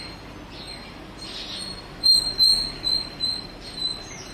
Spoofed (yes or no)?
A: no